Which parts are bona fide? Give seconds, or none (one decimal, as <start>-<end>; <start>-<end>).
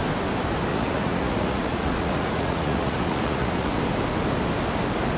0.0-0.7; 3.8-5.2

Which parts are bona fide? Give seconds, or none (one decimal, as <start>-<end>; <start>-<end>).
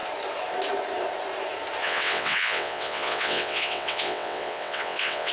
0.0-1.8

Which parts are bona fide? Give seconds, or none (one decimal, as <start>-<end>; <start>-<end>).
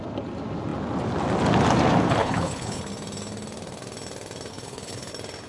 0.0-2.2; 2.8-4.5; 5.1-5.5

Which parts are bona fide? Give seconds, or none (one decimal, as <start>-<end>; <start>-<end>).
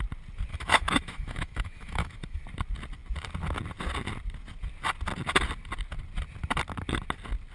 0.0-0.5; 2.4-7.5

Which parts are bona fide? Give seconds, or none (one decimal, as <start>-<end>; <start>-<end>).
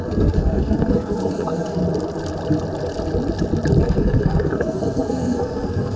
1.8-3.8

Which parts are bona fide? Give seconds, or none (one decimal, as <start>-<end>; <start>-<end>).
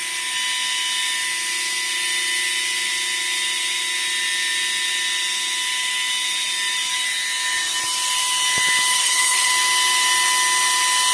0.0-8.9; 9.5-11.1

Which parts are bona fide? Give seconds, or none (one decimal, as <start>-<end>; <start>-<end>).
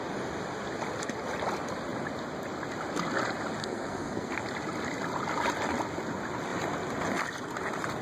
0.0-3.6; 4.3-8.0